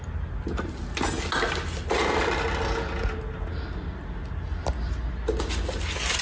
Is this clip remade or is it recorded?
recorded